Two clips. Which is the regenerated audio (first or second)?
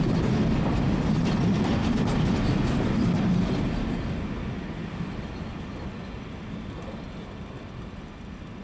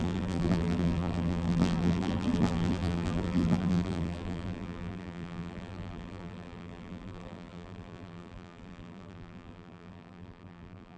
second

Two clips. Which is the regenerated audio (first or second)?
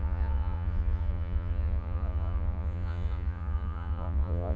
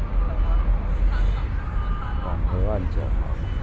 first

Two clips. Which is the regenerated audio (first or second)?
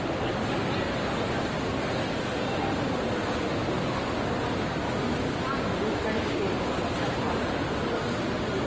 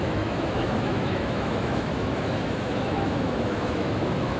second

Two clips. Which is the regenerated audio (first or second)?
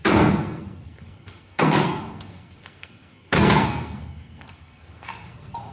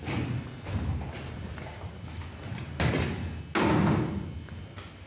first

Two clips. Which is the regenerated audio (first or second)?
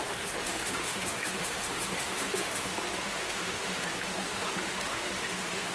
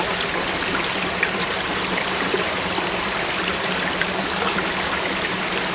first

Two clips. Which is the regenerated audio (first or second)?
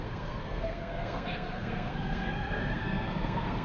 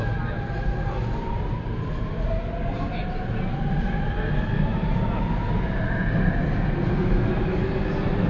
first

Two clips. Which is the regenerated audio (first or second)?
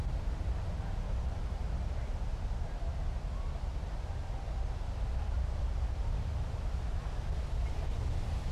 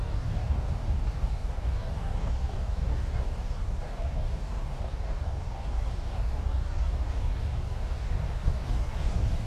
second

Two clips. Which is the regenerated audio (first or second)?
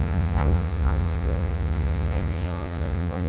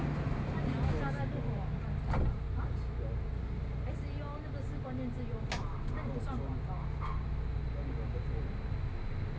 first